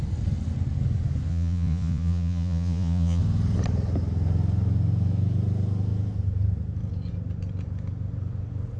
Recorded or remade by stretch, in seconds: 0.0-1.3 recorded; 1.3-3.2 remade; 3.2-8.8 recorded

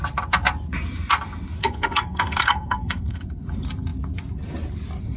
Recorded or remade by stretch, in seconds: 0.0-1.6 recorded; 1.6-3.2 remade; 3.2-5.2 recorded